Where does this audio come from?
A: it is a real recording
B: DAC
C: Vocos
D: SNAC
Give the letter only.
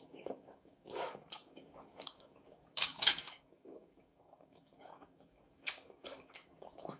B